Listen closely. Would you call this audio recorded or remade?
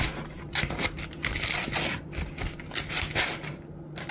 recorded